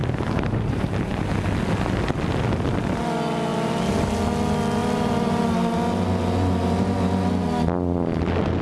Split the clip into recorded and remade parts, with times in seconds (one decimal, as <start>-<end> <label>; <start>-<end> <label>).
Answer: 0.0-1.2 remade; 1.2-3.5 recorded; 3.5-4.2 remade; 4.2-4.8 recorded; 4.8-5.4 remade; 5.4-8.6 recorded